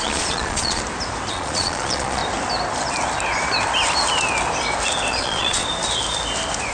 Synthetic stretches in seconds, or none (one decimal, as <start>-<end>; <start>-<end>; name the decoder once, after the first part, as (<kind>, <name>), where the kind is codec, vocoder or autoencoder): 0.0-0.8 (vocoder, Vocos); 1.3-2.2; 5.1-5.6